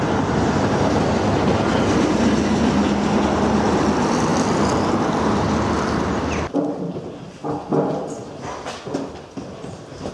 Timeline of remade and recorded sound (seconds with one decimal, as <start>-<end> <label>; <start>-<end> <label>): 0.0-10.1 recorded